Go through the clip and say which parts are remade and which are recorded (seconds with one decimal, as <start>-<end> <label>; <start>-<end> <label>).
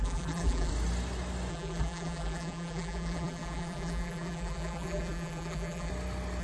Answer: 0.0-0.7 remade; 0.7-1.5 recorded; 1.5-5.9 remade; 5.9-6.4 recorded